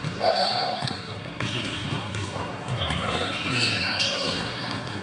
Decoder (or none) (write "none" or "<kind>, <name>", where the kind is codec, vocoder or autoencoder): codec, SNAC